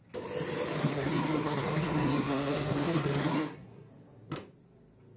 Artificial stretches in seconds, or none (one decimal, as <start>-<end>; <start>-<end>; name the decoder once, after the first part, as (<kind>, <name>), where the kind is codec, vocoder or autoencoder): 0.8-3.9 (codec, SNAC)